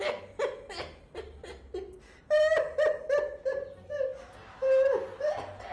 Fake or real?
real